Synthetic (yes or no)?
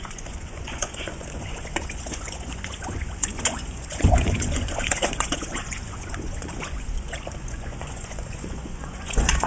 yes